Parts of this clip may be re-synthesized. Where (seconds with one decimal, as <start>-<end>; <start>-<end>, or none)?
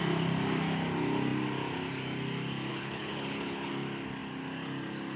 2.7-3.7